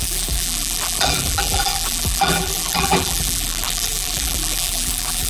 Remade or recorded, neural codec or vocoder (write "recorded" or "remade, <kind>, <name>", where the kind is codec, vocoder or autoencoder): remade, vocoder, BigVGAN v2